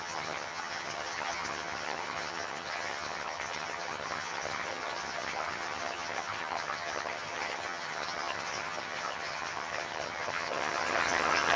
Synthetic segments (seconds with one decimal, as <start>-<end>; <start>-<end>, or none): 0.0-11.6